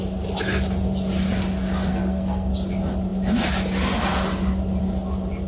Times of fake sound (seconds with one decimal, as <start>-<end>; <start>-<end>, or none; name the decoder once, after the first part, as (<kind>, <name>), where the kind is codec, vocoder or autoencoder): 1.9-2.5 (codec, SNAC)